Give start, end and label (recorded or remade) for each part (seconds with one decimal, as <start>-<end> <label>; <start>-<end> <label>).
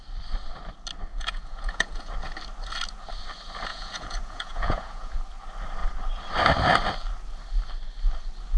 0.0-1.1 recorded; 1.1-2.1 remade; 2.1-3.7 recorded; 3.7-5.2 remade; 5.2-8.6 recorded